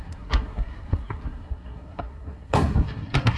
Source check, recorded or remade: remade